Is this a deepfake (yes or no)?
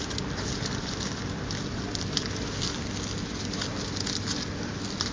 no